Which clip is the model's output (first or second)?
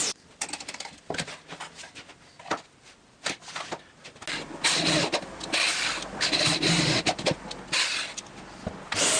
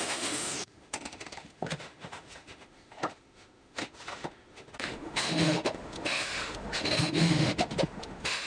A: second